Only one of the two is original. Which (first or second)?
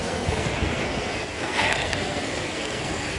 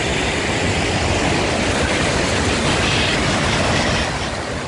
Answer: second